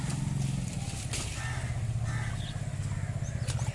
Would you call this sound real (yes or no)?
yes